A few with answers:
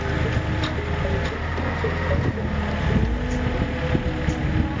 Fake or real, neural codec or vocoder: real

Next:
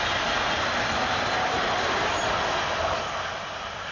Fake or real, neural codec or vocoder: real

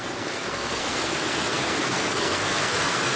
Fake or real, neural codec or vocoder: fake, codec, SNAC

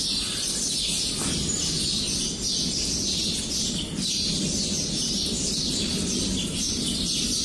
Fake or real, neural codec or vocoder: real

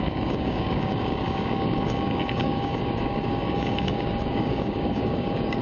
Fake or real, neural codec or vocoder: fake, codec, DAC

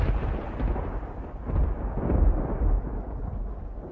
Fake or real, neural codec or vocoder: real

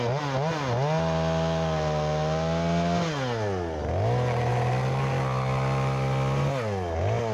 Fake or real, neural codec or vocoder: real